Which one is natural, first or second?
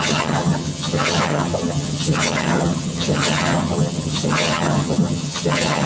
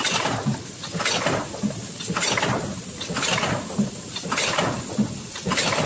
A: second